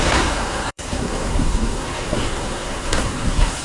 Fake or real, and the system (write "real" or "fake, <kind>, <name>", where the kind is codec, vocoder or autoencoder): fake, codec, SNAC